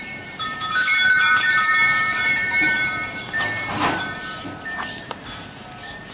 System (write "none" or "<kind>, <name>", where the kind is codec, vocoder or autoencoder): vocoder, BigVGAN v2